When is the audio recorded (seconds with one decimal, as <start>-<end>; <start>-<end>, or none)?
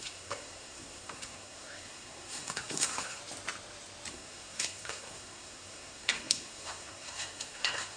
3.2-4.1